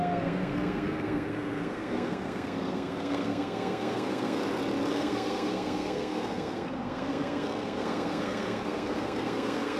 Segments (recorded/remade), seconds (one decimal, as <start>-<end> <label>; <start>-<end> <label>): 0.0-4.4 remade; 4.4-4.9 recorded; 4.9-9.8 remade